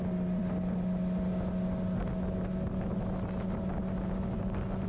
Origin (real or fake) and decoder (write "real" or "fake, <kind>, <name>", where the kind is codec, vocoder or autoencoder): real